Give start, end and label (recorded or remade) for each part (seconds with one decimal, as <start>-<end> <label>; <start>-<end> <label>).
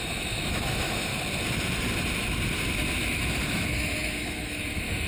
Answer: 0.0-1.1 remade; 1.1-3.5 recorded; 3.5-5.1 remade